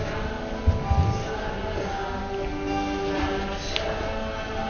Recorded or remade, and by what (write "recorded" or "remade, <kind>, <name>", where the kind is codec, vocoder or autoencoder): recorded